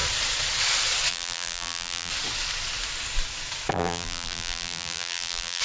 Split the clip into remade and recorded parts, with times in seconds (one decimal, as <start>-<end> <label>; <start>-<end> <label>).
0.0-1.1 recorded; 1.1-2.1 remade; 2.1-3.7 recorded; 3.7-5.6 remade